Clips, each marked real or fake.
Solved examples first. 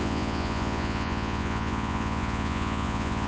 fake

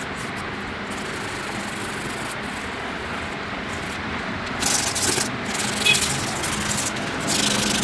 real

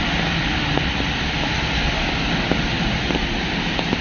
real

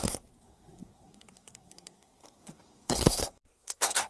fake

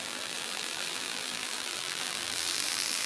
fake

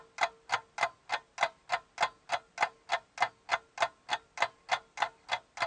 real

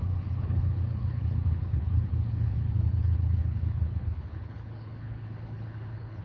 fake